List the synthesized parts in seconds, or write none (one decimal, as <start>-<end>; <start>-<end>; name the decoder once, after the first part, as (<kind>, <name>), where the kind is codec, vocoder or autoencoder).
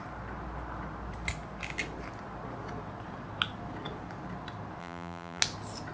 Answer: 4.8-5.4 (vocoder, BigVGAN v2)